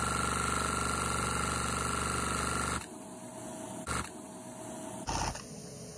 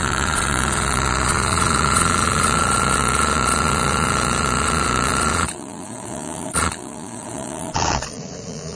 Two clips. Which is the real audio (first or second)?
first